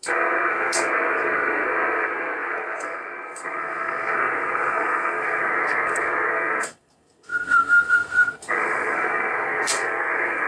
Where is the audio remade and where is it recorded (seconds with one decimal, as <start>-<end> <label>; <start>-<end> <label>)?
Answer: 0.0-10.5 remade